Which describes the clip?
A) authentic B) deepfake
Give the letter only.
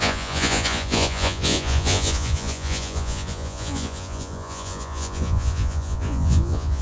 B